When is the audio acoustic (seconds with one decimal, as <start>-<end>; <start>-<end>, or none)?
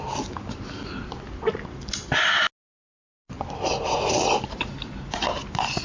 0.0-3.1